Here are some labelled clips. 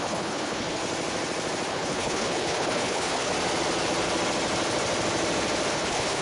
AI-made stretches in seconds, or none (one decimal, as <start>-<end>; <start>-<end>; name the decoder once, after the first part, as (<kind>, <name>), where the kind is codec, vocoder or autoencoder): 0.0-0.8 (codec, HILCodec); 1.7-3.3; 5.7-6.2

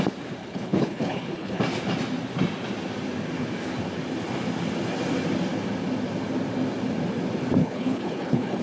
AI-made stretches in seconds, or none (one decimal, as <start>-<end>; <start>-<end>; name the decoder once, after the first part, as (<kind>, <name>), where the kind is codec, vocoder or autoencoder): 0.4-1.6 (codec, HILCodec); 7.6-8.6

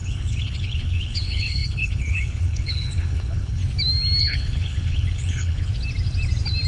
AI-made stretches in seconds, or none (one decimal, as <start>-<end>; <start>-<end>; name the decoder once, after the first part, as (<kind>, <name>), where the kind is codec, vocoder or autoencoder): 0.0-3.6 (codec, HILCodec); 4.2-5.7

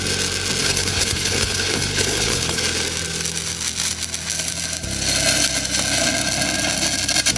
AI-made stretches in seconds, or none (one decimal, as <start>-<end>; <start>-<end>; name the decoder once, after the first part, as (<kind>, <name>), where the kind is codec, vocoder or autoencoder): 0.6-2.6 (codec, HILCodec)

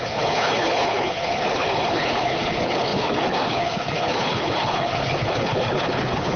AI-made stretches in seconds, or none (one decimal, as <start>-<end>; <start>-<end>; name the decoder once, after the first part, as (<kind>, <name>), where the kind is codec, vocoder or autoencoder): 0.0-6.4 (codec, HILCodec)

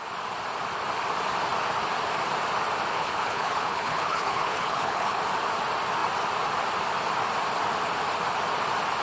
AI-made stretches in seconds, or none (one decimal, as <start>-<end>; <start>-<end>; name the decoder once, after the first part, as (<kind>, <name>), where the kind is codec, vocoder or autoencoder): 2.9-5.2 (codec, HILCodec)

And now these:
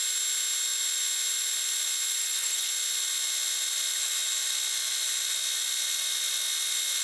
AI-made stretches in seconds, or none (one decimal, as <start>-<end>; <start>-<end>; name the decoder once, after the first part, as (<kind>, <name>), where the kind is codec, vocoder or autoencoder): 2.2-2.7 (codec, HILCodec)